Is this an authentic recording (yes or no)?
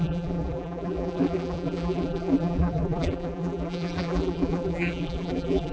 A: no